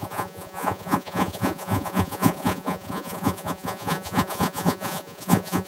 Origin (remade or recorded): remade